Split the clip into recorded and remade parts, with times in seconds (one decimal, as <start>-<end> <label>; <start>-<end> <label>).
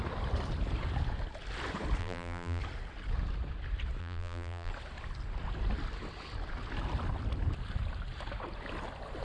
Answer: 0.0-2.0 recorded; 2.0-2.6 remade; 2.6-4.0 recorded; 4.0-4.7 remade; 4.7-9.2 recorded